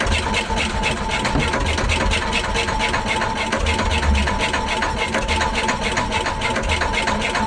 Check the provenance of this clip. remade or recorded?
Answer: recorded